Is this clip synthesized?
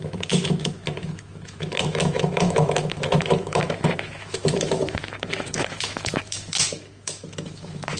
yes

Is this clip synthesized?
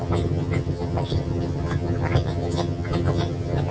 yes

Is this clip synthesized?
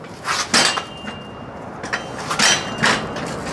no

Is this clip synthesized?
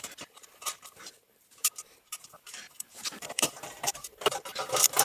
yes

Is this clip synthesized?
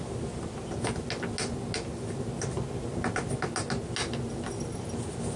no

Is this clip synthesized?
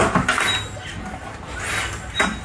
no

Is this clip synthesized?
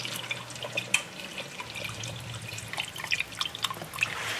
no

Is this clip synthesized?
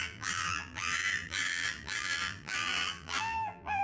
yes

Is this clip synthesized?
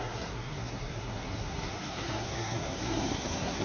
yes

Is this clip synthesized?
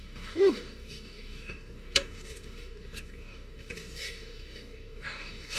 yes